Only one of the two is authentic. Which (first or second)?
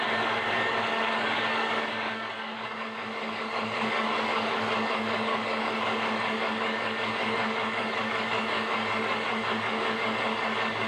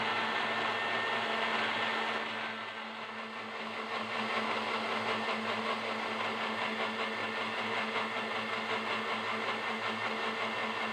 second